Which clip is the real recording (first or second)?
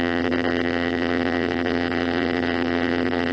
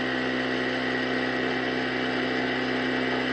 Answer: second